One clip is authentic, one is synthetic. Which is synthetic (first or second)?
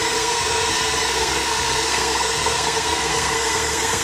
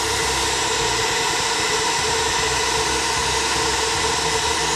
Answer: first